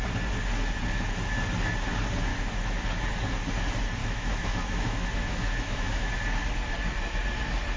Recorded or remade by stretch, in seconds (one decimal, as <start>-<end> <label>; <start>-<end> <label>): 0.0-2.3 recorded; 2.3-2.8 remade; 2.8-4.0 recorded; 4.0-6.1 remade; 6.1-7.8 recorded